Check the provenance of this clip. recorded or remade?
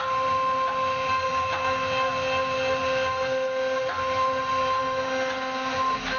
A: recorded